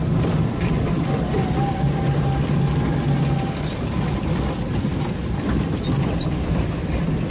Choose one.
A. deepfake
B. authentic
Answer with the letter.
B